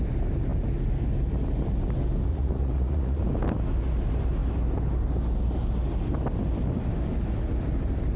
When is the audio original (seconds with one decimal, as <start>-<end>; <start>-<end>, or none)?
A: 0.0-2.3; 3.2-8.2